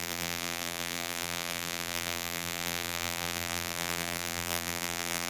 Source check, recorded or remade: remade